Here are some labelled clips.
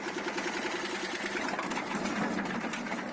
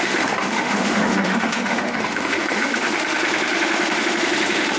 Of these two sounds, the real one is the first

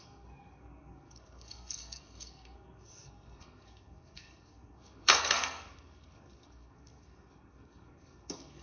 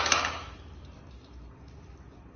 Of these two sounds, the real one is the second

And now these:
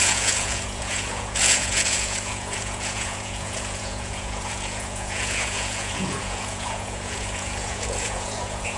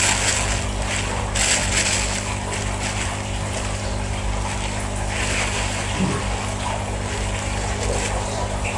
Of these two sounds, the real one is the second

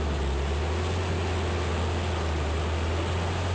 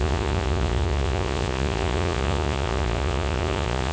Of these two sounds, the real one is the first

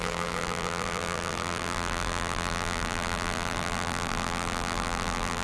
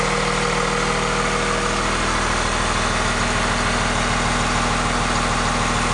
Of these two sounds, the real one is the second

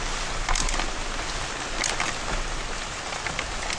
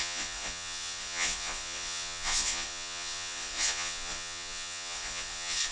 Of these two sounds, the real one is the first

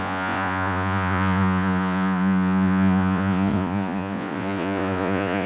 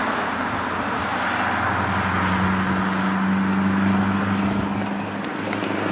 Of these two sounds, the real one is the second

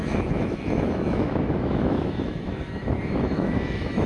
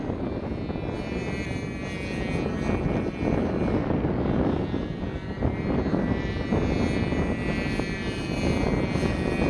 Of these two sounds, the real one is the second